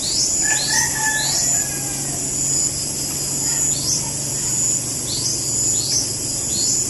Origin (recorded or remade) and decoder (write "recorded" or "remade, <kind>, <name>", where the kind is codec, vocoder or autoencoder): recorded